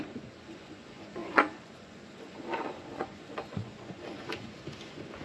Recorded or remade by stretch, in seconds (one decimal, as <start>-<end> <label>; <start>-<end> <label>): 0.0-5.2 remade